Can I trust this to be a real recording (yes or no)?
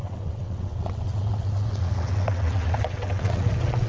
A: no